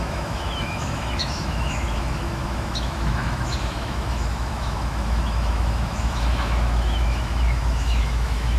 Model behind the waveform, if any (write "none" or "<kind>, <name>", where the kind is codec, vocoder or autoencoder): autoencoder, DAC-VAE